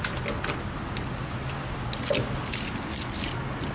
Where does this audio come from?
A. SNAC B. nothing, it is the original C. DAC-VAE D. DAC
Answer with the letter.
B